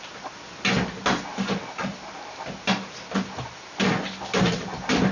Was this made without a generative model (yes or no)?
yes